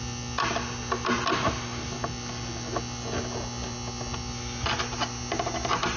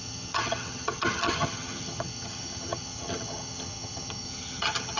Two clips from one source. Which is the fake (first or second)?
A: second